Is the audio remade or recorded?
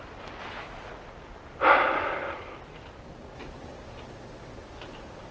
recorded